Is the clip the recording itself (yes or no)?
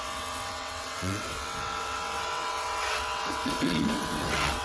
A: no